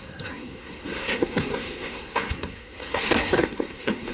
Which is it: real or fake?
fake